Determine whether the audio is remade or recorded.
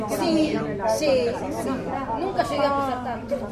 recorded